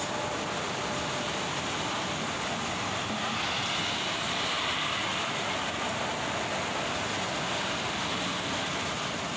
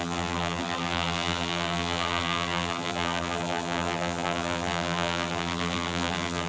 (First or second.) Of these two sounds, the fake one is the second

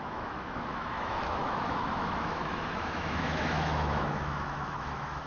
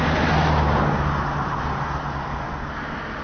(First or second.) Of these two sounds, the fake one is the first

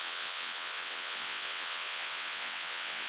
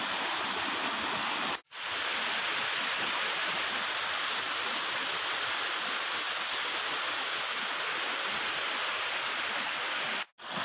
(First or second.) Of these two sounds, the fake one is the first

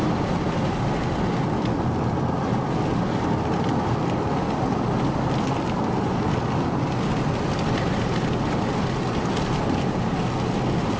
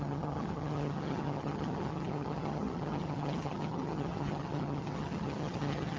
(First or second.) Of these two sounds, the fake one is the second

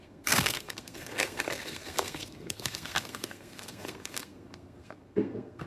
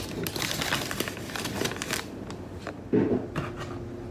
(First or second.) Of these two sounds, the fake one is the first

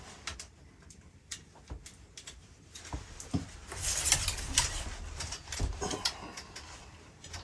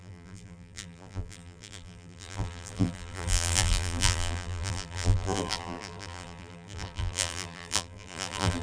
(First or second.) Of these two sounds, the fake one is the second